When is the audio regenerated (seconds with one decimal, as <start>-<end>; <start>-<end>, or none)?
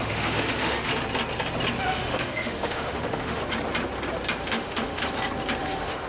0.0-0.9; 1.8-3.4; 4.4-5.1; 5.6-6.1